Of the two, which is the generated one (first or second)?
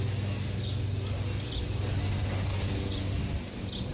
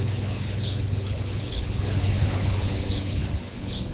second